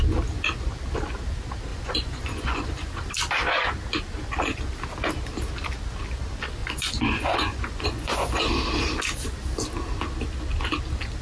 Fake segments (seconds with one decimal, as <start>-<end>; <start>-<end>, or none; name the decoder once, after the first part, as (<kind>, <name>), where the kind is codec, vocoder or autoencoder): 1.7-2.9 (vocoder, Vocos); 6.6-8.4